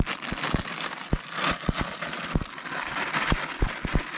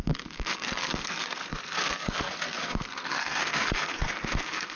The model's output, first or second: second